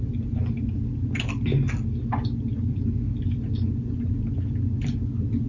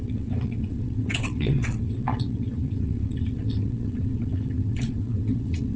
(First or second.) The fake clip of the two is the second